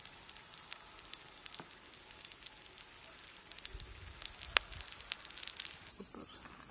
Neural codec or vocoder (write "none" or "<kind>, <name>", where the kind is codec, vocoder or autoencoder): none